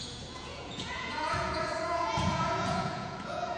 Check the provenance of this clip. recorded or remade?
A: remade